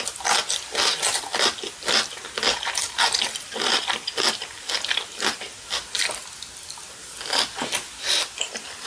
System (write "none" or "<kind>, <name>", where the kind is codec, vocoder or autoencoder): none